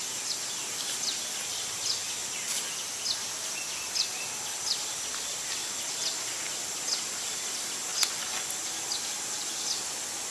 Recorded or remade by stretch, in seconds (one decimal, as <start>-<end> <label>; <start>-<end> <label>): 0.0-7.9 recorded; 7.9-8.5 remade; 8.5-10.3 recorded